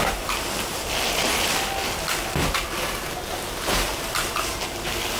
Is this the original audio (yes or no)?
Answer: yes